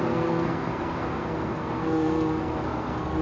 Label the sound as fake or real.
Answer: fake